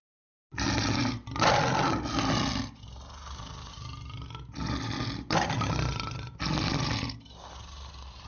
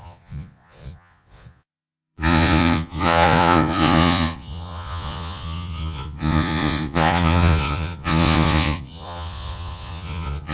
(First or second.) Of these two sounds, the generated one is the second